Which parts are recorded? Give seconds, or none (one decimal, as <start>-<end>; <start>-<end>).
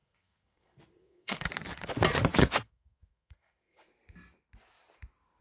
1.5-2.4; 3.9-5.4